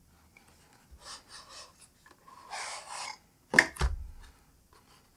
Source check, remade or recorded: recorded